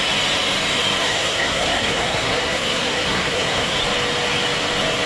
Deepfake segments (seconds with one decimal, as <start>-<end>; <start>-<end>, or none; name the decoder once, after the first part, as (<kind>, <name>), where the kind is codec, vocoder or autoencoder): 1.0-3.8 (codec, SNAC)